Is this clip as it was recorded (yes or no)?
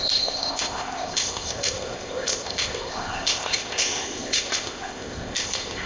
no